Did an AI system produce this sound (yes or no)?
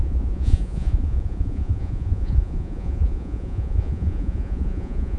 yes